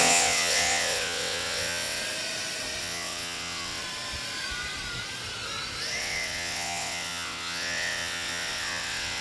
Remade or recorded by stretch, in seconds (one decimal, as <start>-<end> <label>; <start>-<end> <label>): 0.0-2.0 remade; 2.0-2.8 recorded; 2.8-3.8 remade; 3.8-6.0 recorded; 6.0-9.2 remade